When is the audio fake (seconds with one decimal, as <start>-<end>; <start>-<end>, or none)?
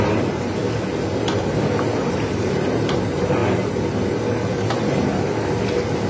0.0-0.6; 2.0-3.4; 4.5-5.1